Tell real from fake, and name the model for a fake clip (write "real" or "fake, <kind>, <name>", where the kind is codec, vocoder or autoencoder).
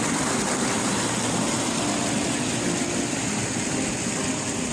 real